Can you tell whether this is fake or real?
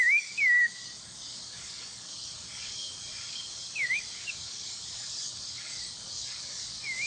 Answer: fake